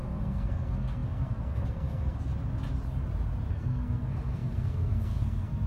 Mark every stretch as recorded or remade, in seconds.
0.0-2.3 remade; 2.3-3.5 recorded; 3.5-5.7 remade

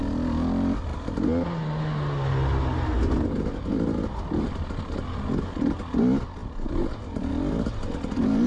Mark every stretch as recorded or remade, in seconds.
0.0-8.5 recorded